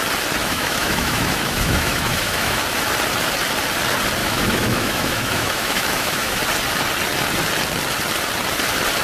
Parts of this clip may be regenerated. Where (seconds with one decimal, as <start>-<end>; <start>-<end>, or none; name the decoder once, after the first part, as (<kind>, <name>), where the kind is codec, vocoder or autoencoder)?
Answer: 0.4-2.6 (autoencoder, DAC-VAE); 4.2-6.4